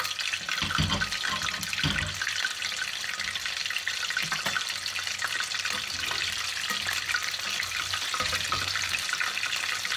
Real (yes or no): yes